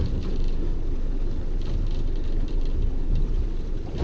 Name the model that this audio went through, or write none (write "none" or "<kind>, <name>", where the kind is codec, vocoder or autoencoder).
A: vocoder, BigVGAN v2